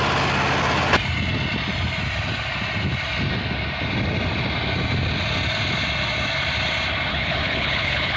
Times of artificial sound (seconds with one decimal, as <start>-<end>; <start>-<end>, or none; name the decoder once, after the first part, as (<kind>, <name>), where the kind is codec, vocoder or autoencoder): 7.1-8.2 (codec, HILCodec)